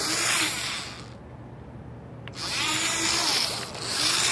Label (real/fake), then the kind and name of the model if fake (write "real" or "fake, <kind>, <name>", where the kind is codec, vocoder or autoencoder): real